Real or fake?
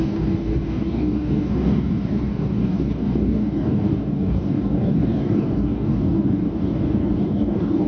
fake